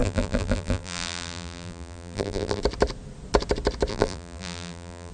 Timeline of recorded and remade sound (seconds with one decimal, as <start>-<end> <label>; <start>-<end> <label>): 0.0-2.6 remade; 2.6-3.9 recorded; 3.9-5.1 remade